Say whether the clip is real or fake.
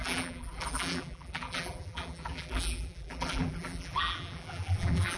fake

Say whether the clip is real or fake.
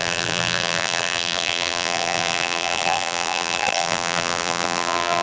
fake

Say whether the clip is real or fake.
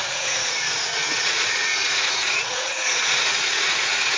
fake